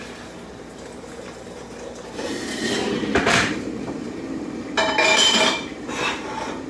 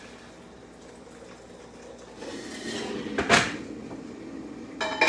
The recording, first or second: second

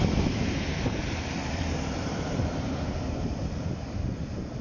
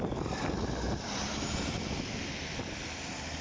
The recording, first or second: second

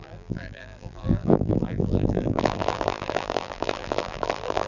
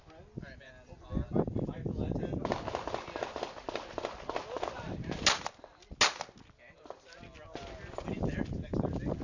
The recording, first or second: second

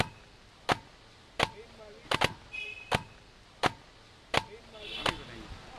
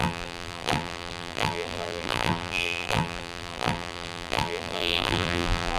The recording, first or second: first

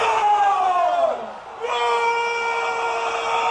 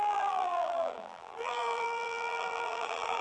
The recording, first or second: first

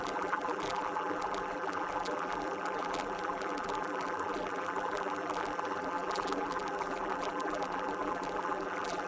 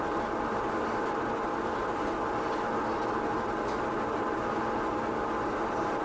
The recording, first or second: second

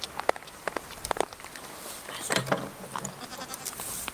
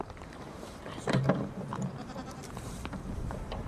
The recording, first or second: first